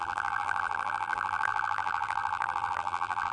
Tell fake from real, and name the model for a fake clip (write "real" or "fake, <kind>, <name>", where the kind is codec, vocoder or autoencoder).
fake, vocoder, BigVGAN v2